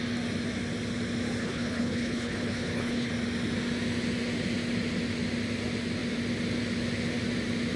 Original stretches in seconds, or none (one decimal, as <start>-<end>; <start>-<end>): 0.0-1.4; 3.1-7.8